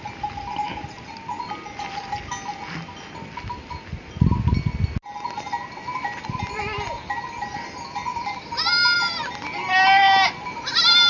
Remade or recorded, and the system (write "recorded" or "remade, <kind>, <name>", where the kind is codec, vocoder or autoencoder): recorded